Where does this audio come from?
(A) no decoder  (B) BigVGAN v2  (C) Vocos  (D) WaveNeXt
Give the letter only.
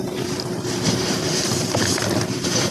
B